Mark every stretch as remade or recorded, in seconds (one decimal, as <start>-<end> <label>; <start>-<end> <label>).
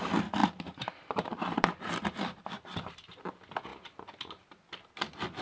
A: 0.0-3.7 remade; 3.7-5.4 recorded